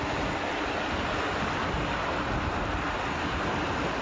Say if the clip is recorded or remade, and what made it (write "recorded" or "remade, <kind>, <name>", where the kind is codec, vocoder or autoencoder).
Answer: recorded